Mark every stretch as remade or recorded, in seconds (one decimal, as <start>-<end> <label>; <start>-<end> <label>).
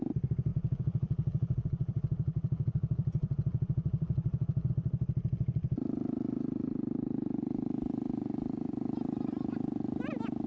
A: 0.0-0.5 recorded; 0.5-4.7 remade; 4.7-10.5 recorded